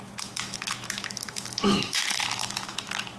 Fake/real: fake